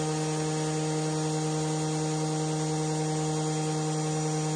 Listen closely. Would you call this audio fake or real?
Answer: real